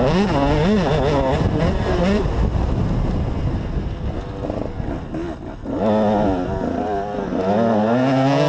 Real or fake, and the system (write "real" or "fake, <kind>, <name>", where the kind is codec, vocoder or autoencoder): real